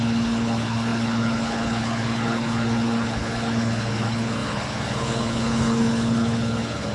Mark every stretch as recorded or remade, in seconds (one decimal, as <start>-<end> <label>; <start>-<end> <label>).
0.0-6.9 remade